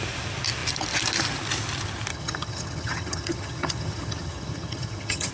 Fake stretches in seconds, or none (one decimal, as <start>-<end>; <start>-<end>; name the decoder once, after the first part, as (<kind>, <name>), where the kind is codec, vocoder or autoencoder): 2.1-5.3 (vocoder, HiFi-GAN)